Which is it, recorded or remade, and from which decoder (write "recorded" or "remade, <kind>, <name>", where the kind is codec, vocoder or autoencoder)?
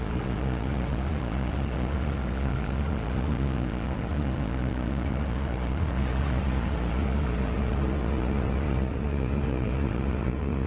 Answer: remade, vocoder, Vocos